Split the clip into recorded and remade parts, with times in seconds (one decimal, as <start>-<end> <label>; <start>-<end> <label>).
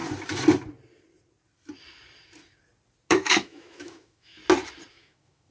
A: 0.0-3.1 recorded; 3.1-4.4 remade; 4.4-4.9 recorded; 4.9-5.5 remade